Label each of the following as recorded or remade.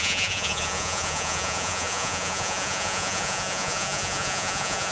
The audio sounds remade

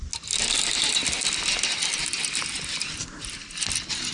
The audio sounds recorded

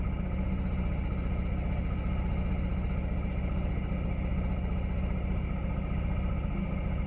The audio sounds recorded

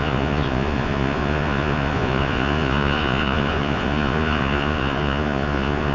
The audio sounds remade